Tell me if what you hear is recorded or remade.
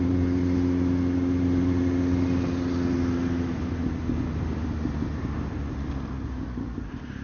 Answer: recorded